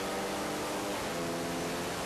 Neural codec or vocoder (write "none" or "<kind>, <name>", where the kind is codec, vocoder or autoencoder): none